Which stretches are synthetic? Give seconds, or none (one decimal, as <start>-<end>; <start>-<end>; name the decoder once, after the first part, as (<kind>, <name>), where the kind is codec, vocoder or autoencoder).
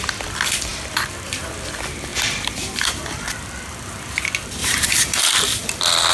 2.1-3.0 (vocoder, BigVGAN v2); 4.6-5.2